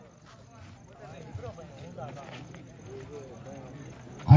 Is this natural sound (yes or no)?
yes